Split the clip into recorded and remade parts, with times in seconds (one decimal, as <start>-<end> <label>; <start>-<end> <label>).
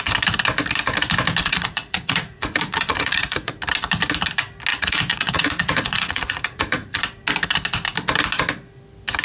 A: 0.0-1.4 recorded; 1.4-3.5 remade; 3.5-4.7 recorded; 4.7-7.0 remade; 7.0-9.2 recorded